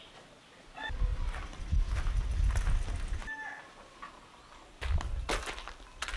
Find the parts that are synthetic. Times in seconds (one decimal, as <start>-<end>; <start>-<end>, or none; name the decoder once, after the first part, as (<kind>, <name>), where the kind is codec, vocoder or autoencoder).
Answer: none